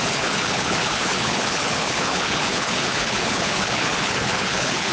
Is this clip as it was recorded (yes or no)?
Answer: no